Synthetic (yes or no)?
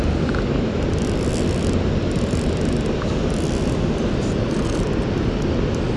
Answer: no